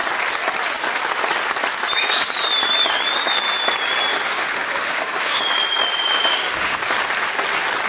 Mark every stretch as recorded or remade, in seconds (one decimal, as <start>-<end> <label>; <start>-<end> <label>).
0.0-4.1 recorded; 4.1-5.4 remade; 5.4-6.3 recorded; 6.3-6.8 remade; 6.8-7.9 recorded